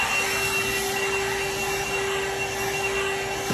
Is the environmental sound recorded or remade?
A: recorded